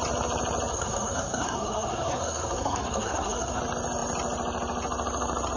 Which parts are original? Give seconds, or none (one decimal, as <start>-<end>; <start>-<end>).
0.0-0.7; 3.6-5.6